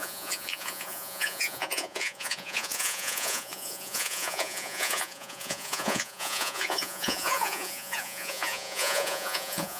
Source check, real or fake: fake